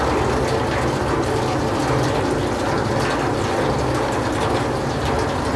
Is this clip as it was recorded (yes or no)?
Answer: yes